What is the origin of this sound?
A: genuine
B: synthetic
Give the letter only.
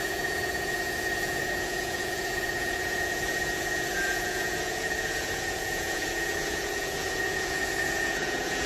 B